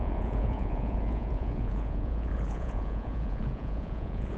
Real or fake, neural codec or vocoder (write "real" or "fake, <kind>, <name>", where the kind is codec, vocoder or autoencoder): fake, vocoder, Vocos